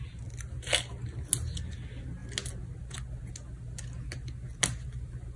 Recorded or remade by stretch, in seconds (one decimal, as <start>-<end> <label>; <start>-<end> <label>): 0.0-5.4 recorded